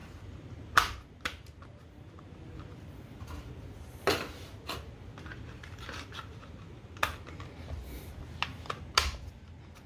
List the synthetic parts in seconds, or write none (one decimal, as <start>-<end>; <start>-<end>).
0.0-0.6